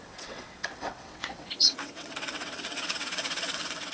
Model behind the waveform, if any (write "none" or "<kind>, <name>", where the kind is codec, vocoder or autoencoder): vocoder, WaveNeXt